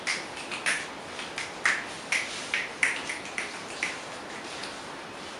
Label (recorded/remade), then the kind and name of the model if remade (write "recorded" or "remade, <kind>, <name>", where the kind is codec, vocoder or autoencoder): recorded